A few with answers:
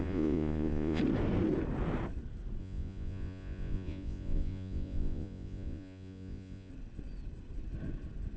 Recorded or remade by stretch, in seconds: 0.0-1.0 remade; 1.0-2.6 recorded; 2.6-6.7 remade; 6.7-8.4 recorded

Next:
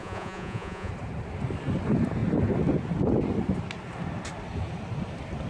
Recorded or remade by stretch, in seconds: 0.0-0.9 remade; 0.9-5.5 recorded

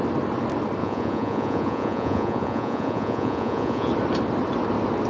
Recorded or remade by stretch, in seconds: 0.0-0.8 recorded; 0.8-3.9 remade; 3.9-5.1 recorded

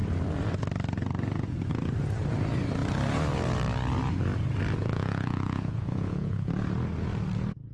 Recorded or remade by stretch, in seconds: 0.0-4.8 recorded; 4.8-6.5 remade; 6.5-7.7 recorded

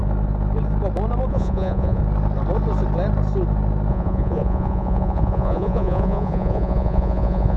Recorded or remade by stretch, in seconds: 0.0-1.3 recorded; 1.3-2.0 remade; 2.0-3.9 recorded; 3.9-7.6 remade